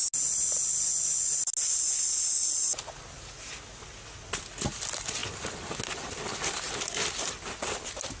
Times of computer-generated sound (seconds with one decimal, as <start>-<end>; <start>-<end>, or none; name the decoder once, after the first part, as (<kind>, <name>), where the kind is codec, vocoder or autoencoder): none